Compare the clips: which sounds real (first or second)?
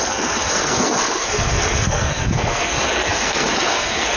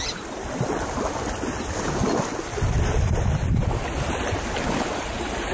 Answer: second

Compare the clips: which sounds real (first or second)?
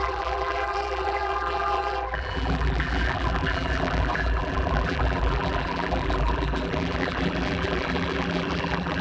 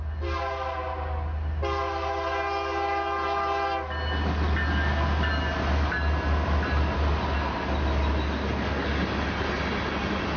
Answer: second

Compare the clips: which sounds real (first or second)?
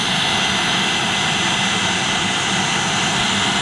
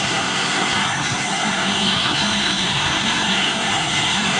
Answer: first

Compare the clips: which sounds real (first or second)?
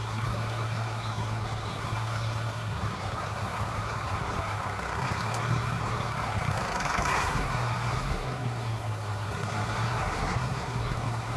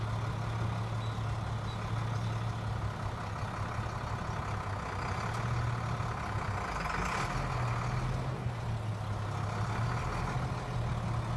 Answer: second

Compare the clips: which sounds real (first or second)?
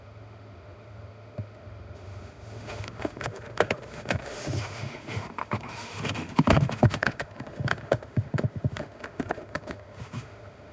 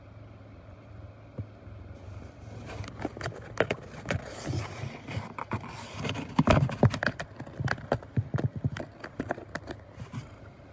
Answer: second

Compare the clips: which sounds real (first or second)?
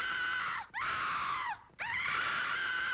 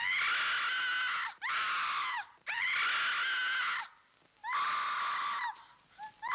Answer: second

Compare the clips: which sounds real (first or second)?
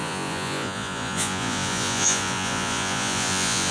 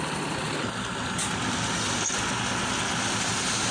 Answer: second